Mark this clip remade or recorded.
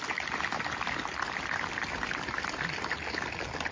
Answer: recorded